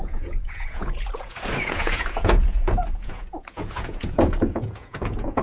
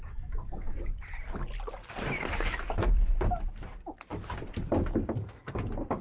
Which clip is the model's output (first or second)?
first